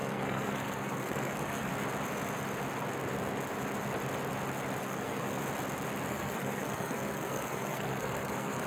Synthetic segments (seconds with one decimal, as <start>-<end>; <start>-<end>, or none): 0.0-1.7; 4.8-5.4; 6.1-8.7